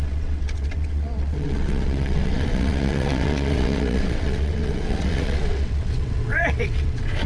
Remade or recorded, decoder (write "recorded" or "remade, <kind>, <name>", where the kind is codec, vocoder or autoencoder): remade, vocoder, WaveNeXt